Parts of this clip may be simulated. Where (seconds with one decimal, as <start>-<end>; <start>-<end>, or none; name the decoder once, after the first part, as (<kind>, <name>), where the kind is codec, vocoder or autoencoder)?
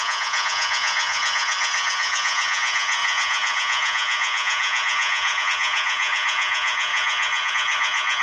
0.0-8.2 (vocoder, Vocos)